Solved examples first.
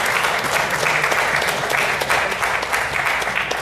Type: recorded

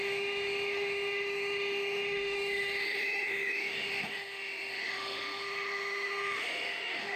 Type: remade